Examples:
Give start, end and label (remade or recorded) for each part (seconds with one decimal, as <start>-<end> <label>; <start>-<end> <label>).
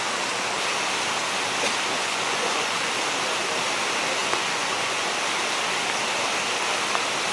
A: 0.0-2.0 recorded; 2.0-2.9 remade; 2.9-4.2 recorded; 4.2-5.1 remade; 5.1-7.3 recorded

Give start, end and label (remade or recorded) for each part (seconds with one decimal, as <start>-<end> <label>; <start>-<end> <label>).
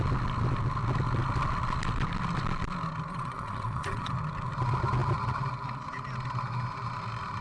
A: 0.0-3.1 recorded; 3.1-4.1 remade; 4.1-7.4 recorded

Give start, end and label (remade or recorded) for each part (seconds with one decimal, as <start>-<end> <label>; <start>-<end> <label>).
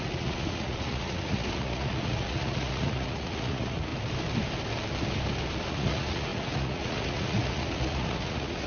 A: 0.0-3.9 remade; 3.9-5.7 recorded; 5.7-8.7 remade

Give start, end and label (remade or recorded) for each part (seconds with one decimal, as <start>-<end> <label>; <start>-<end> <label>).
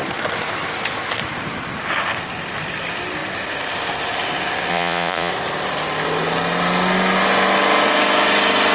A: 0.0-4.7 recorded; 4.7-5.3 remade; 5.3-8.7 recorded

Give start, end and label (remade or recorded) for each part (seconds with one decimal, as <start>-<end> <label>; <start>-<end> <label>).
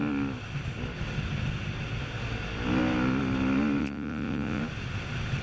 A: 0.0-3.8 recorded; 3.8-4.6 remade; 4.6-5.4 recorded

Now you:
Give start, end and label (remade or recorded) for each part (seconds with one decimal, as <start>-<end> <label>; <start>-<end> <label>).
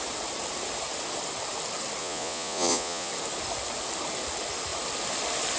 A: 0.0-2.0 recorded; 2.0-3.1 remade; 3.1-5.6 recorded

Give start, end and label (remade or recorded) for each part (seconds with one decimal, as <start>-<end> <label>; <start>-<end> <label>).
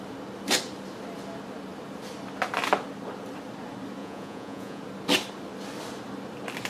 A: 0.0-4.0 recorded; 4.0-4.8 remade; 4.8-6.7 recorded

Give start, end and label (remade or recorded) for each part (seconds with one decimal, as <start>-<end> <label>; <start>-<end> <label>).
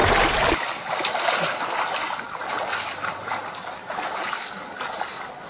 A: 0.0-5.5 recorded